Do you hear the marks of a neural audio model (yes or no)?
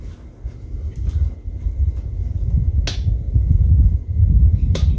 no